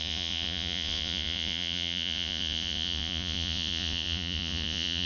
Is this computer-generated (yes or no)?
yes